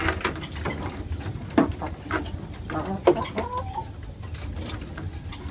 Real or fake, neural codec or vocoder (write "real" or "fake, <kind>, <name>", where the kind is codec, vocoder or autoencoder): real